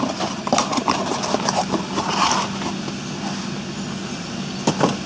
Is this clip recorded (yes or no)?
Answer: yes